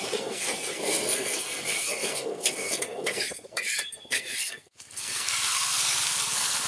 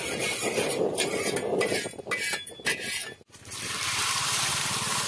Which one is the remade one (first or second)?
first